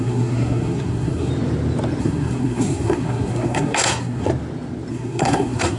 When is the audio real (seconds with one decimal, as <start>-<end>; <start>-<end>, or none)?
1.3-2.0; 4.3-4.9